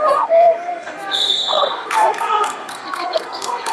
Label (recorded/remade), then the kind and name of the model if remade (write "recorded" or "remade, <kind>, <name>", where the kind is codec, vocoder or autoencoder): remade, codec, SNAC